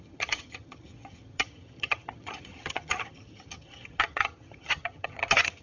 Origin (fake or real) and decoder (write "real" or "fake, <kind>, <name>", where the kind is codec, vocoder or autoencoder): fake, vocoder, HiFi-GAN